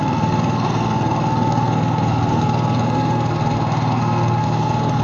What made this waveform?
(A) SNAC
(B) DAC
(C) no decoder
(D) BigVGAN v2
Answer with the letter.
A